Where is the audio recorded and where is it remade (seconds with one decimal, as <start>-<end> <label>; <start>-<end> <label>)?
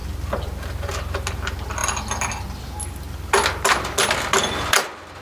0.0-5.2 recorded